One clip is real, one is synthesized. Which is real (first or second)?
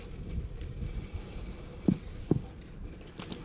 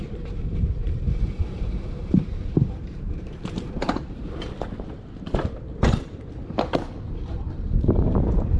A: first